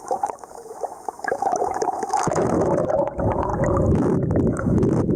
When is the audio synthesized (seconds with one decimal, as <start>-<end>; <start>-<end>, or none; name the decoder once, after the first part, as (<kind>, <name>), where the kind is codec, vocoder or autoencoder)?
0.0-3.5 (autoencoder, DAC-VAE); 4.5-5.2